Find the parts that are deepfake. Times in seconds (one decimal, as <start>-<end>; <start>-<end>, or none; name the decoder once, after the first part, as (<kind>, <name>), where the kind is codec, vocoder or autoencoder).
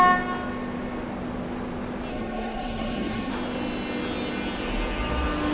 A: 2.1-3.3 (codec, SNAC)